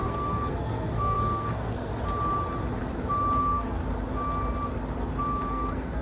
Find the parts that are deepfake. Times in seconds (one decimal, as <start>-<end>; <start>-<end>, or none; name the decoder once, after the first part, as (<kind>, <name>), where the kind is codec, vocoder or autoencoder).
0.0-1.9 (codec, SNAC); 3.4-3.8; 5.5-6.0